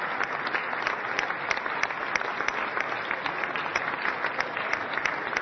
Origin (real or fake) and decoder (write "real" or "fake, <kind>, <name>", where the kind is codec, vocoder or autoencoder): real